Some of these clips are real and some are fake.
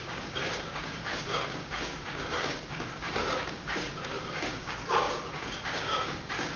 fake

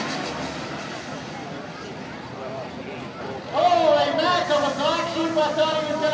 real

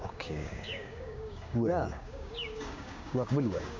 fake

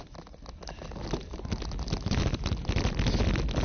real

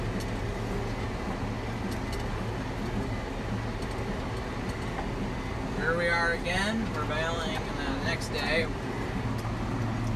real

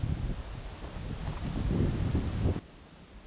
real